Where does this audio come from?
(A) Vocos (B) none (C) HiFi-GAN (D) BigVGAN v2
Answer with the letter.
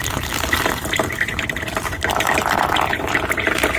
D